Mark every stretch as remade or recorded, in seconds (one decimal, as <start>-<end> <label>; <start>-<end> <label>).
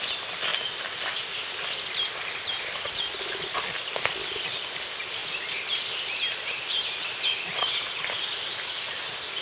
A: 0.0-5.2 recorded; 5.2-7.7 remade; 7.7-9.4 recorded